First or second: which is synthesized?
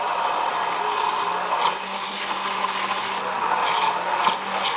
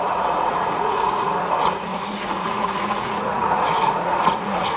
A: second